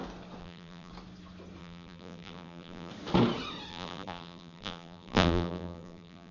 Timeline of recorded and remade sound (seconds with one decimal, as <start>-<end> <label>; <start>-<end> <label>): 0.0-0.4 recorded; 0.4-0.9 remade; 0.9-1.6 recorded; 1.6-2.9 remade; 2.9-3.7 recorded; 3.7-6.3 remade